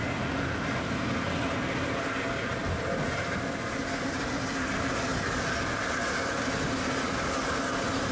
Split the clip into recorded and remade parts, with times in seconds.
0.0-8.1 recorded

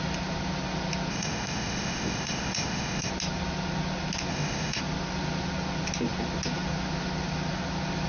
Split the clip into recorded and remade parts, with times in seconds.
0.0-1.1 recorded; 1.1-3.1 remade; 3.1-4.3 recorded; 4.3-4.8 remade; 4.8-8.1 recorded

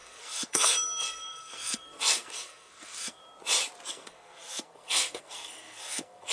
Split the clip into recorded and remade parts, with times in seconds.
0.0-3.2 remade; 3.2-3.9 recorded; 3.9-6.3 remade

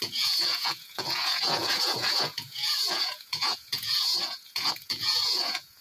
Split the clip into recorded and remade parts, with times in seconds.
0.0-5.8 remade

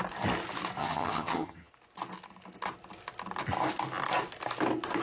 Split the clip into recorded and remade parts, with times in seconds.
0.0-0.8 recorded; 0.8-1.7 remade; 1.7-5.0 recorded